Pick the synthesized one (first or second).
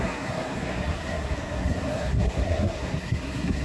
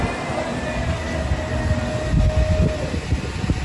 first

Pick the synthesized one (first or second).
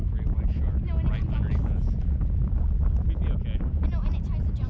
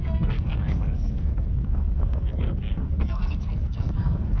second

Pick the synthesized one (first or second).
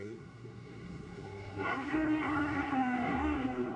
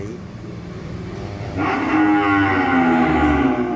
first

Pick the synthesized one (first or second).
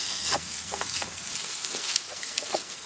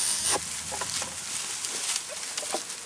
first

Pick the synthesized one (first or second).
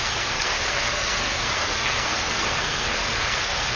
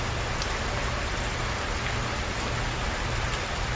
first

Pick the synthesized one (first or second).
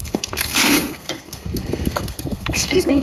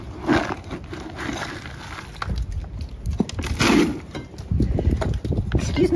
first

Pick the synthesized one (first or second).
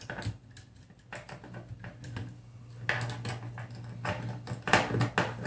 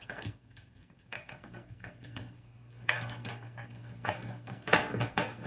second